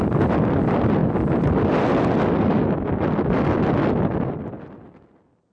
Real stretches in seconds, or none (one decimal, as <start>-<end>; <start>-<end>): 0.0-5.5